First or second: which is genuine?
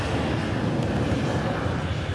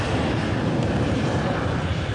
first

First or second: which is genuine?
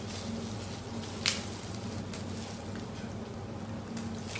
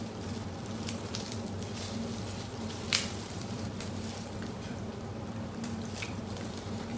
first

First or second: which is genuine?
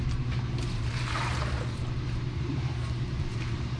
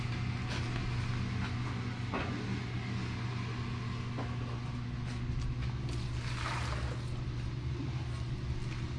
second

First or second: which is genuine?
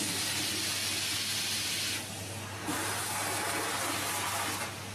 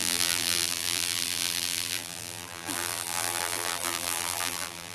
first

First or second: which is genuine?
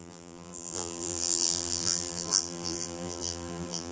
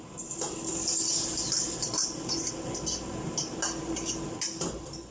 second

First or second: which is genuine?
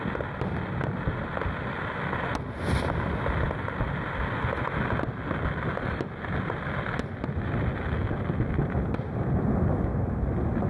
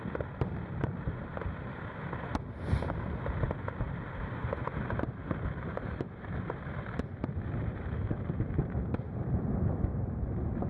first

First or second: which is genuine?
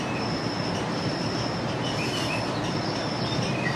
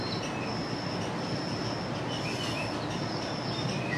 second